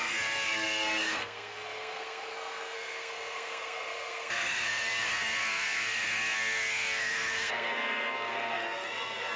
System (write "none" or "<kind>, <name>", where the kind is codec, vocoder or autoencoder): codec, SNAC